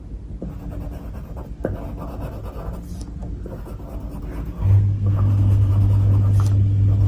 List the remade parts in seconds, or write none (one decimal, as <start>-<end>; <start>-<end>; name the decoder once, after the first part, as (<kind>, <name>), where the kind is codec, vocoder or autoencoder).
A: 4.4-5.7 (codec, SNAC)